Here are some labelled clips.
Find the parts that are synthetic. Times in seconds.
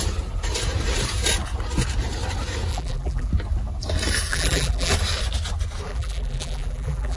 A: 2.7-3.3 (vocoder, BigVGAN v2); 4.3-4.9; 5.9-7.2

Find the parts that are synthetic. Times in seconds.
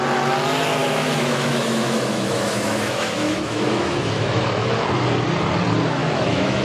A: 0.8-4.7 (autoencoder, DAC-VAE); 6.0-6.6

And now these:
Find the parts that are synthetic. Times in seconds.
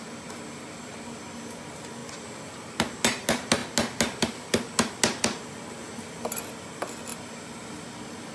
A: none